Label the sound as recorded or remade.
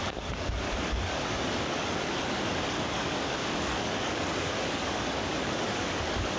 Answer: remade